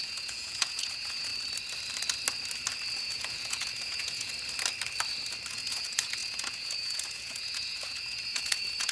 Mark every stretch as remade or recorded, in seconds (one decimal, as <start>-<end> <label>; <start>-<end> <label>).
0.0-1.3 remade; 1.3-3.0 recorded; 3.0-4.3 remade; 4.3-5.5 recorded; 5.5-8.9 remade